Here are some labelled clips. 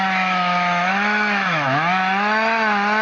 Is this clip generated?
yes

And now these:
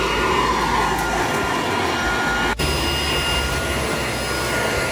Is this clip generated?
no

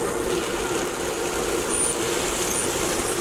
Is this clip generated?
no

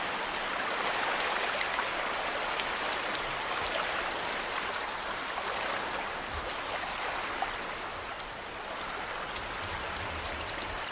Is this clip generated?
no